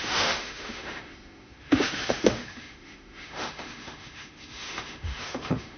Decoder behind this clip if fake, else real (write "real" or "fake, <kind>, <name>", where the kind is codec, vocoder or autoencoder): fake, autoencoder, DAC-VAE